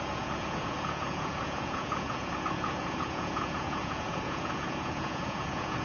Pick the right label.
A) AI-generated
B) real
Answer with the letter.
A